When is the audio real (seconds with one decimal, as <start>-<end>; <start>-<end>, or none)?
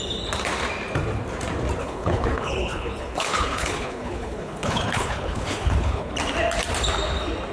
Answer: 0.0-1.8; 6.1-7.5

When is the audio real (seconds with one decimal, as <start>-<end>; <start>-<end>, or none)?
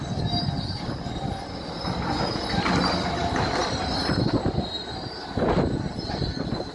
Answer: 0.0-6.7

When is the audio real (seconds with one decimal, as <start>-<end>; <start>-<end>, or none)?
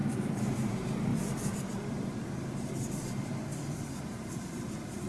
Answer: 0.0-1.1; 2.0-3.5; 4.4-5.1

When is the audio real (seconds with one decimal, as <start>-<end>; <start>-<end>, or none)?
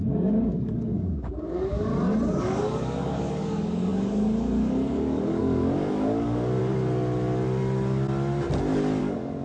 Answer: 1.9-2.4; 6.6-9.0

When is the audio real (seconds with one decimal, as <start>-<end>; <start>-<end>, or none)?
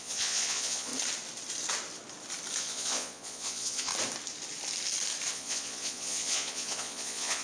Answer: 0.9-2.6; 3.9-5.3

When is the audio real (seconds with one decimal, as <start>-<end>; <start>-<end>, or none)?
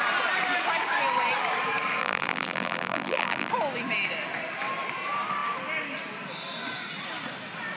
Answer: 0.0-2.0; 3.5-7.8